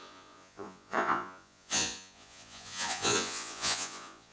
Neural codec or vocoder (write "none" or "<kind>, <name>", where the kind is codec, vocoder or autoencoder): vocoder, Vocos